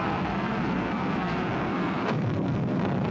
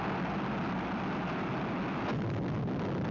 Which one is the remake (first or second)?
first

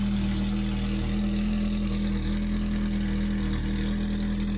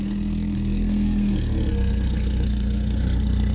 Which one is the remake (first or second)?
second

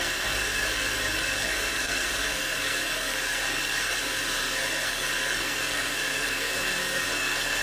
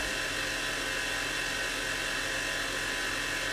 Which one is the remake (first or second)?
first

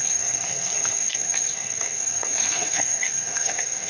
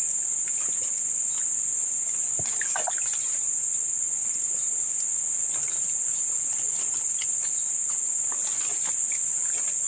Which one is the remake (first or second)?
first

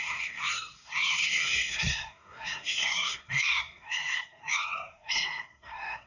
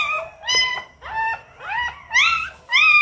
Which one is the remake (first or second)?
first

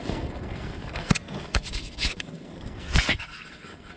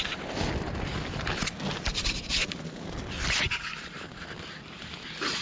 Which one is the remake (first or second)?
first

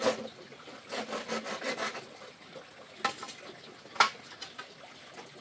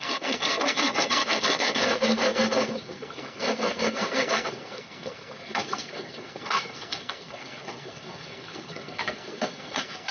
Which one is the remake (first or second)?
second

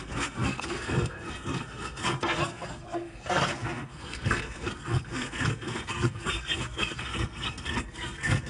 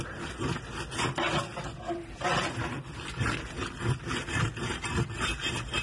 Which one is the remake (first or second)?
first